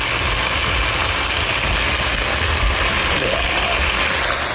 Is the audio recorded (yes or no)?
yes